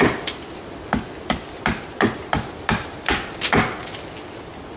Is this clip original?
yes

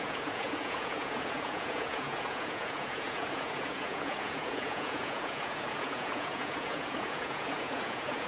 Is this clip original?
no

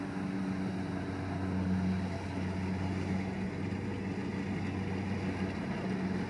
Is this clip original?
yes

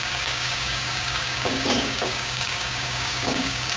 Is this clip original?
no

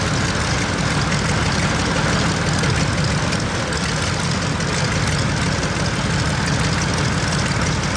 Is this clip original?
yes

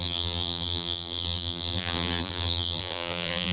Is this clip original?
no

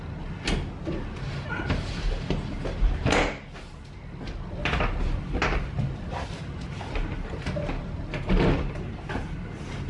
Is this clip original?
yes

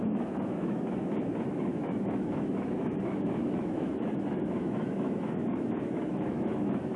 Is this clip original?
no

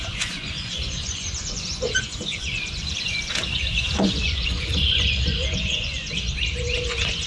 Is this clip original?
no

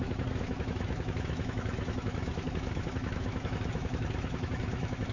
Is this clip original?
no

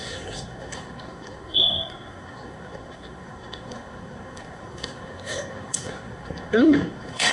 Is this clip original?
no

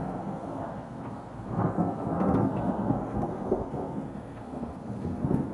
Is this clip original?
no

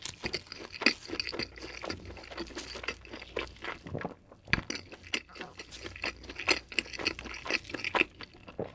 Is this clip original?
yes